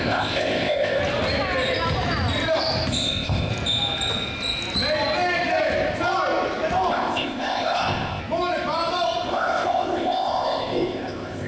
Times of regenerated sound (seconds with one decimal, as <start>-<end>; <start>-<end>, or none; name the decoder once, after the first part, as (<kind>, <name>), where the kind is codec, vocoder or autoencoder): 0.0-1.0 (codec, ZipCodec); 2.9-3.5; 6.9-8.2; 9.3-11.5